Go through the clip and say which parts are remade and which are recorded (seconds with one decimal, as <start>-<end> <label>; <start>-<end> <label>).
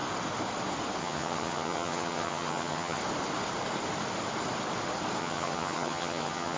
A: 0.0-1.0 recorded; 1.0-3.0 remade; 3.0-5.2 recorded; 5.2-6.6 remade